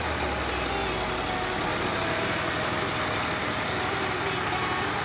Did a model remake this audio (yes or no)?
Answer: no